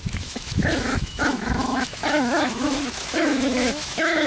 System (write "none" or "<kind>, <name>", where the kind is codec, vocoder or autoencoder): autoencoder, DAC-VAE